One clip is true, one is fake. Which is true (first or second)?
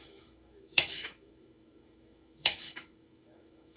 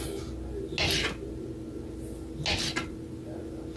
second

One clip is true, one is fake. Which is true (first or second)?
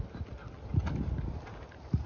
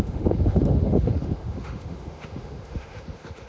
first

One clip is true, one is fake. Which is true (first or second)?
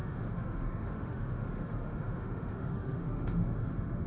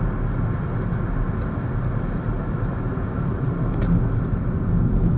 second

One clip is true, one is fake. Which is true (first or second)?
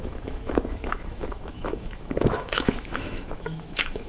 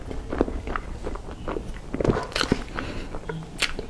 second